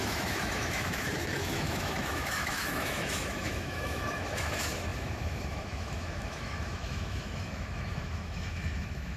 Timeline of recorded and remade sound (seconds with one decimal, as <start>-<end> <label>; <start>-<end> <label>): 0.0-9.2 remade